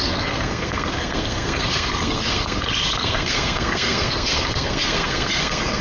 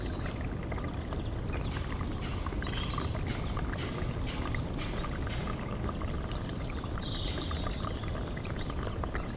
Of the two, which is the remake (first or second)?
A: first